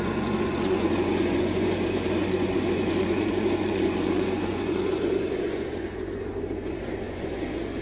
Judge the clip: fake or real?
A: fake